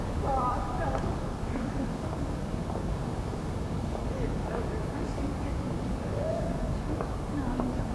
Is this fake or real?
fake